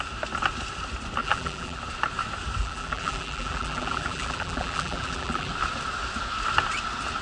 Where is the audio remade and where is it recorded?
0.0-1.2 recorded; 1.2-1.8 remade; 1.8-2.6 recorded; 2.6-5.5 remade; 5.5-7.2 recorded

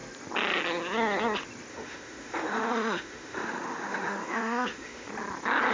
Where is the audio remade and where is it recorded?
0.0-1.7 recorded; 1.7-5.1 remade; 5.1-5.7 recorded

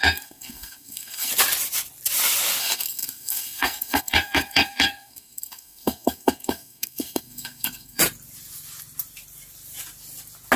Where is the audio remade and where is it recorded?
0.0-1.3 remade; 1.3-2.6 recorded; 2.6-8.0 remade; 8.0-10.6 recorded

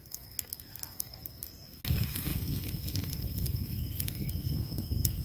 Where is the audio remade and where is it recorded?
0.0-5.2 remade

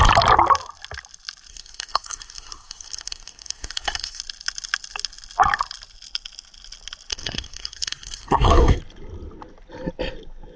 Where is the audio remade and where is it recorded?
0.0-1.5 recorded; 1.5-4.2 remade; 4.2-7.1 recorded; 7.1-8.8 remade; 8.8-10.6 recorded

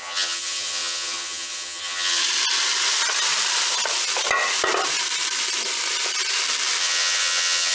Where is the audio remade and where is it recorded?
0.0-2.2 remade; 2.2-6.8 recorded; 6.8-7.7 remade

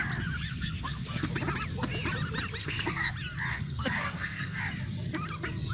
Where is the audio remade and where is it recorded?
0.0-0.5 recorded; 0.5-1.3 remade; 1.3-2.6 recorded; 2.6-3.1 remade; 3.1-3.5 recorded; 3.5-4.6 remade; 4.6-5.7 recorded